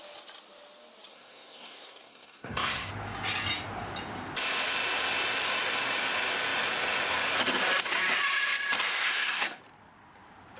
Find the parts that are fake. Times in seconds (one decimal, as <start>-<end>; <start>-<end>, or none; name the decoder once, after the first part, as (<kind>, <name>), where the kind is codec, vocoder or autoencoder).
1.1-2.9 (codec, SNAC); 8.9-9.6